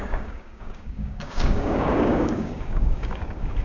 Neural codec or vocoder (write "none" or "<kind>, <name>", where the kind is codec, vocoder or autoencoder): codec, DAC